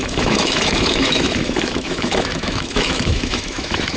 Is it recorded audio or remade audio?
remade